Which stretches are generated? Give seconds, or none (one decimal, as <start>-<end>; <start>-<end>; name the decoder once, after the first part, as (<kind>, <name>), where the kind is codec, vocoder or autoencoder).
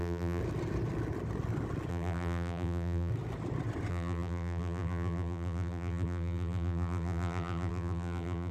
0.0-0.4 (vocoder, BigVGAN v2); 1.9-3.1; 3.9-8.5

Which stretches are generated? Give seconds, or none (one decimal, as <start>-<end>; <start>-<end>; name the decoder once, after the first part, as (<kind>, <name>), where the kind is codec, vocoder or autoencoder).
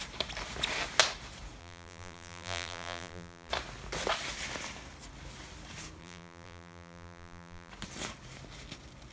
1.6-3.5 (vocoder, BigVGAN v2); 6.0-7.7